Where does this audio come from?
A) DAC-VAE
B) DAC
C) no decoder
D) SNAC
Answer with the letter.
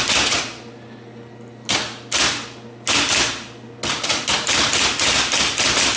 C